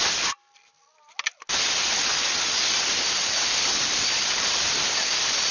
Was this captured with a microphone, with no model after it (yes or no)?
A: yes